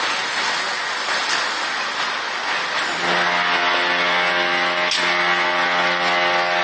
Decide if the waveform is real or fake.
real